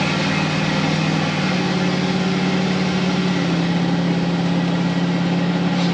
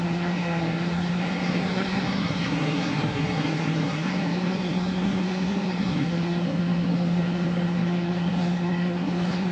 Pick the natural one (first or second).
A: first